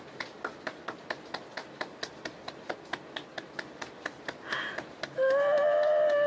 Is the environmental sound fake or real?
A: real